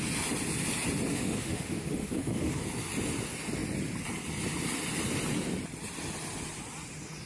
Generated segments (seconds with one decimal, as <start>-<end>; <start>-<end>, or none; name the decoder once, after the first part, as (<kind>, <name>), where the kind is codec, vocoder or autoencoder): 1.1-2.6 (autoencoder, DAC-VAE)